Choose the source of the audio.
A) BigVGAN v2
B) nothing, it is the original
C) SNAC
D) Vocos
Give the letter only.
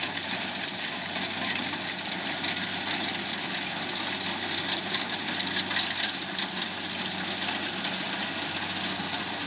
B